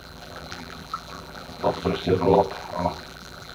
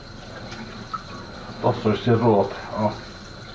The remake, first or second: first